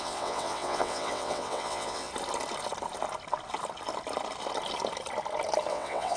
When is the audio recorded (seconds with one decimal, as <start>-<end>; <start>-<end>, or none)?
2.1-5.7